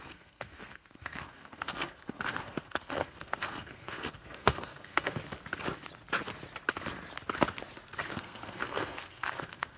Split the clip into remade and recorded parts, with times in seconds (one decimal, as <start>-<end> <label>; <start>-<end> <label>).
0.0-5.2 remade; 5.2-8.1 recorded; 8.1-9.8 remade